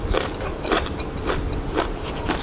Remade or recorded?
remade